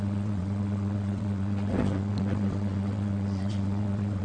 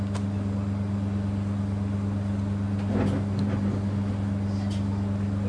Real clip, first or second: second